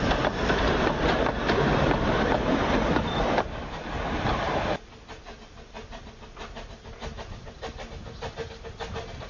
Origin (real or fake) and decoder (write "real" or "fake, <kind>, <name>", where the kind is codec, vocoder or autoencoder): real